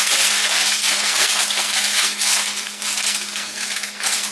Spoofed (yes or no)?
yes